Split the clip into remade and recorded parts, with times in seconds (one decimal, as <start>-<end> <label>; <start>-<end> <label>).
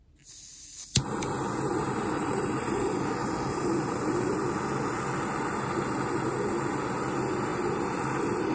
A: 0.0-1.8 recorded; 1.8-2.8 remade; 2.8-3.2 recorded; 3.2-4.3 remade; 4.3-8.5 recorded